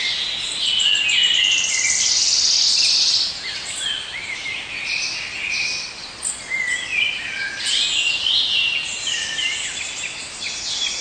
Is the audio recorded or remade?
recorded